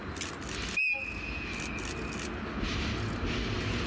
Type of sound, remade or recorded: recorded